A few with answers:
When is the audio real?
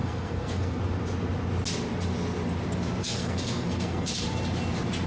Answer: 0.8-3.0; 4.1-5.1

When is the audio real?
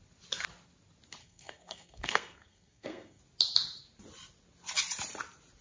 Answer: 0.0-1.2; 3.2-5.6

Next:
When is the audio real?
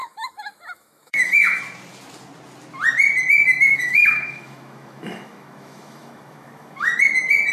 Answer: 1.6-3.7; 6.9-7.5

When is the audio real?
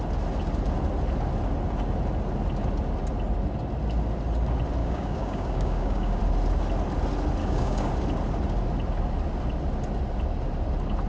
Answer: 0.0-4.8; 6.2-7.4; 7.9-11.1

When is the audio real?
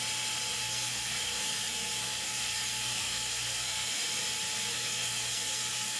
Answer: 0.0-0.6; 4.2-4.7